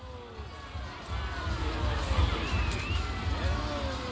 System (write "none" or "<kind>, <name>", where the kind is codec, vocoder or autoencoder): none